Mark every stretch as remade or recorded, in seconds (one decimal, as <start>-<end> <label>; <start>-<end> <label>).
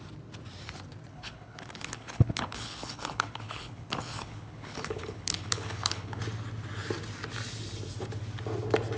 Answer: 0.0-1.1 recorded; 1.1-6.2 remade; 6.2-9.0 recorded